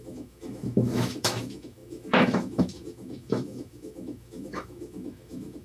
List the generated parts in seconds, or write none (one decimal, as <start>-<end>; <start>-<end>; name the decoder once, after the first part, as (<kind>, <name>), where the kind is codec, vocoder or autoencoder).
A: 0.0-5.6 (autoencoder, DAC-VAE)